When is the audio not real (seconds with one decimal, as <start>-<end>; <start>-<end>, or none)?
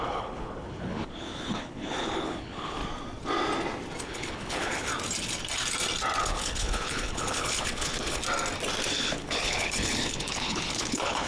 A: 0.0-2.8; 4.0-4.9; 6.2-8.2; 8.9-11.3